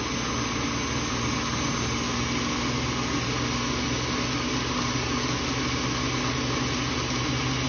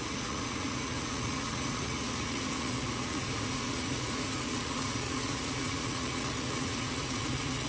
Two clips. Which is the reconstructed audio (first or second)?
second